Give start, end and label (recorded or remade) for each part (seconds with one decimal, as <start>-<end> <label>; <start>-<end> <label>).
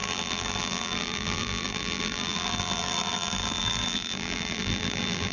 0.0-5.3 remade